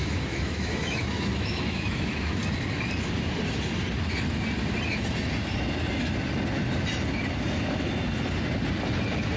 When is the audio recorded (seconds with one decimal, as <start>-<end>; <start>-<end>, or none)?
2.4-9.4